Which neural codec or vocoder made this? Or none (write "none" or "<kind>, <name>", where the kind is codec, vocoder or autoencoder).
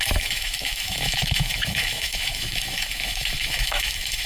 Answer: autoencoder, DAC-VAE